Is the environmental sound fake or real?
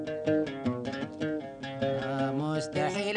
real